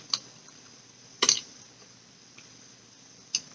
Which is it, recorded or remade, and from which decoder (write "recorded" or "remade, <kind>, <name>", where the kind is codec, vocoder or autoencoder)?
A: recorded